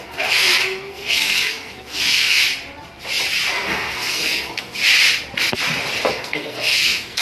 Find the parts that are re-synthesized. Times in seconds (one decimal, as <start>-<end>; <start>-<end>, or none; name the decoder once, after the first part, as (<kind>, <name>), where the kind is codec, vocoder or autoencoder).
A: 0.0-2.4 (codec, SNAC); 3.5-4.8; 6.1-7.2